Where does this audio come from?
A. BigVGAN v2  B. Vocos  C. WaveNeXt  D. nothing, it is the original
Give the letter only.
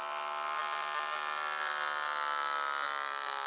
D